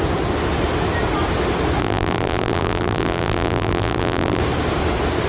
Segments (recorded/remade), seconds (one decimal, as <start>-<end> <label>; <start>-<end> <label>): 0.0-1.8 recorded; 1.8-4.4 remade; 4.4-5.3 recorded